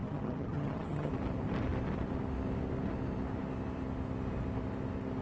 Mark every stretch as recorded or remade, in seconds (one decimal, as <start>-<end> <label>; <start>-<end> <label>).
0.0-1.1 remade; 1.1-5.2 recorded